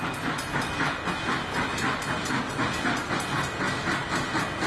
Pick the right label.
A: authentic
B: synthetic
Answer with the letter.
A